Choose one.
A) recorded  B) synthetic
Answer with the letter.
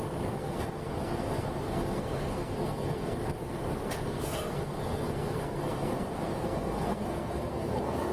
B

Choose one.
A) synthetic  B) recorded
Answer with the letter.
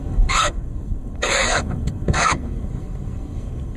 A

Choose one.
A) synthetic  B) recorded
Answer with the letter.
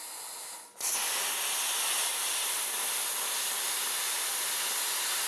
B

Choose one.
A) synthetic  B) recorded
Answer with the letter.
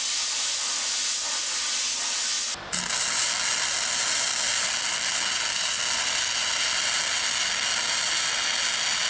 B